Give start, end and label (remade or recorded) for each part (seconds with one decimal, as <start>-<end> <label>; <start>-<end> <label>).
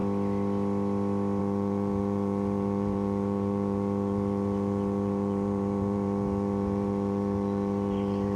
0.0-1.4 recorded; 1.4-8.4 remade